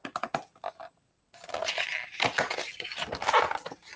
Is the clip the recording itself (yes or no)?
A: yes